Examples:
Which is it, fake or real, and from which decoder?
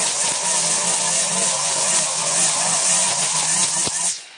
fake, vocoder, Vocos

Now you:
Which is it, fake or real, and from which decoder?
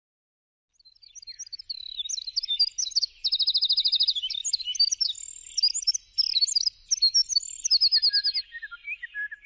real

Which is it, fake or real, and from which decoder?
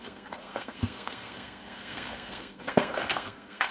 fake, codec, SNAC